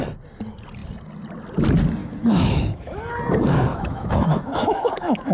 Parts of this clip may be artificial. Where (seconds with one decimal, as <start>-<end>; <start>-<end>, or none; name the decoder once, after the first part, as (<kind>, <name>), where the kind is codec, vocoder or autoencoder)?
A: 2.0-3.0 (autoencoder, DAC-VAE); 3.7-5.3